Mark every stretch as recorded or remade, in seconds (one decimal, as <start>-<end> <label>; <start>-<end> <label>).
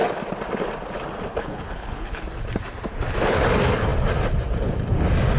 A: 0.0-1.3 recorded; 1.3-2.2 remade; 2.2-5.4 recorded